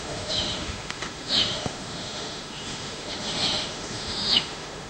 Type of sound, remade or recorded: remade